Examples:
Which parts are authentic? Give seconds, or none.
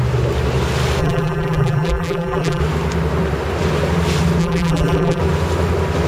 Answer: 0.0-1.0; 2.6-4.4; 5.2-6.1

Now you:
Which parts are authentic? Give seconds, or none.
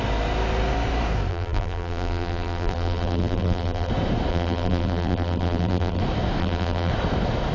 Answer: 0.0-1.3; 3.9-4.3; 6.0-6.4; 6.9-7.5